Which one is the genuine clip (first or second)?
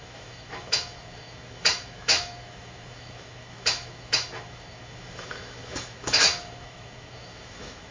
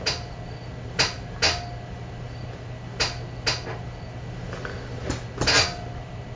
second